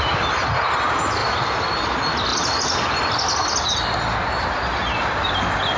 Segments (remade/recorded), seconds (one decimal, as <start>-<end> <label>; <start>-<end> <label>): 0.0-5.8 recorded